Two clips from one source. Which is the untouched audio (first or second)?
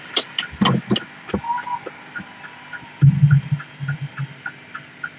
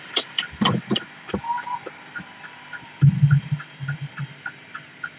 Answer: first